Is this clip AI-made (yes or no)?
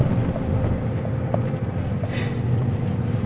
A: no